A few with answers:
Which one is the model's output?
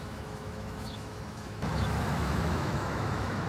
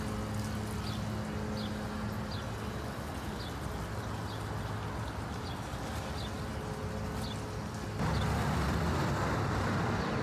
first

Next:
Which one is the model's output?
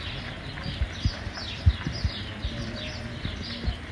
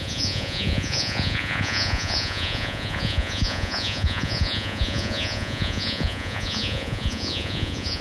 second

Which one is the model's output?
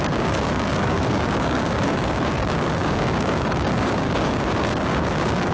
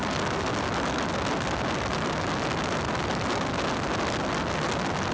first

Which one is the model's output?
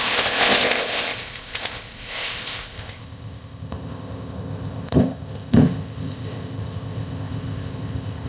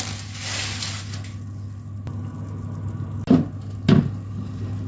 first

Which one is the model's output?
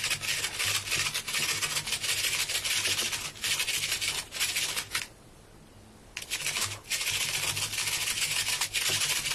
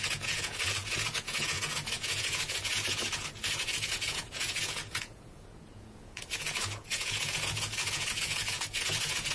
second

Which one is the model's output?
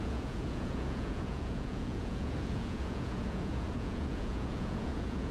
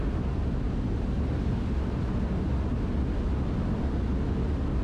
first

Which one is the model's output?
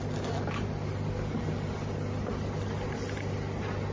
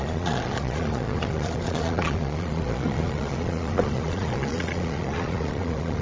second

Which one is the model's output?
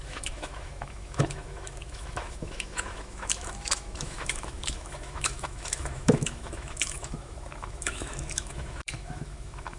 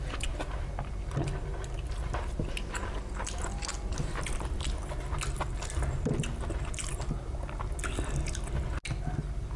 first